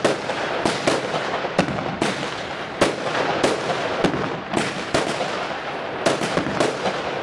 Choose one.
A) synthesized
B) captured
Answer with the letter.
B